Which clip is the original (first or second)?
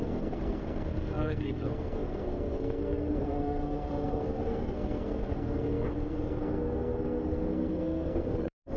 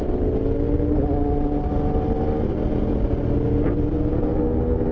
second